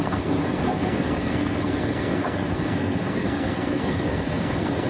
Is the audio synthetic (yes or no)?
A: yes